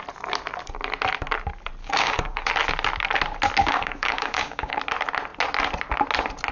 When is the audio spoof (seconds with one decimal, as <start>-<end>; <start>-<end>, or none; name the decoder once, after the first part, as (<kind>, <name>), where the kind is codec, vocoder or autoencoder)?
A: 1.8-2.5 (codec, DAC); 3.6-4.8